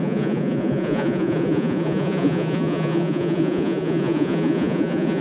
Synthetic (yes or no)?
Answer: yes